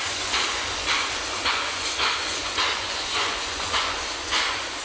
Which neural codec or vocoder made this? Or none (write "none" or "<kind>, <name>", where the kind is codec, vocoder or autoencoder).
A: vocoder, Vocos